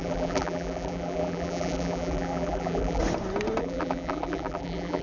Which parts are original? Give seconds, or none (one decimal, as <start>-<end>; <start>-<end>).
3.0-3.6